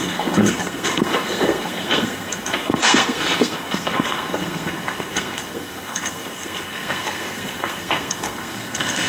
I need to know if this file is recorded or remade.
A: remade